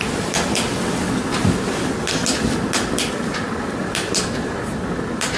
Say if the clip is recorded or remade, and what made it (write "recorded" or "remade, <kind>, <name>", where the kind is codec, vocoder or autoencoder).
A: recorded